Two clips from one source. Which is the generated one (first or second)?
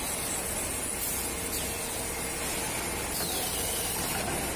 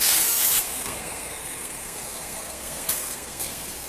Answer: second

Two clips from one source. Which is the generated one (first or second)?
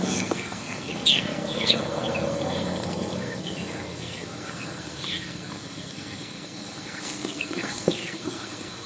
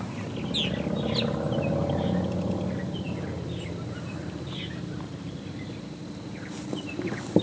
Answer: first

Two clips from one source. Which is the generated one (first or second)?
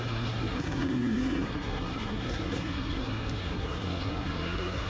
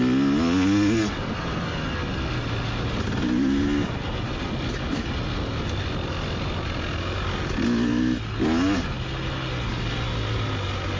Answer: first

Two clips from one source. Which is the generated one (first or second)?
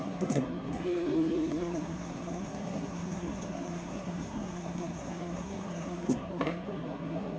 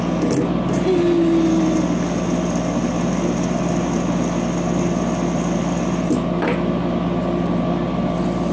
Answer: first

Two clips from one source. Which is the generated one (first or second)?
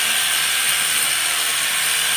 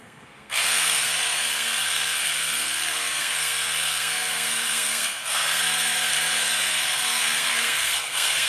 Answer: second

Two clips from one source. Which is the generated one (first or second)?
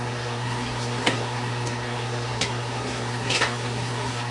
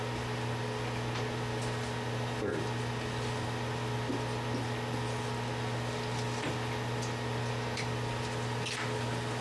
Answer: first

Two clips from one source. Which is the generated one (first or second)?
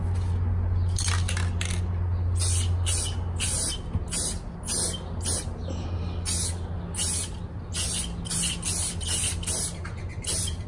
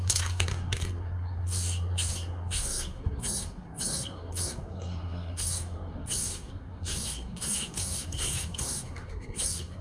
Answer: second